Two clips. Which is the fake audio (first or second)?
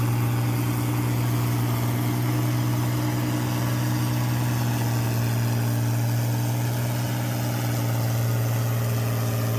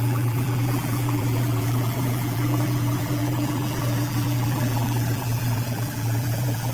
second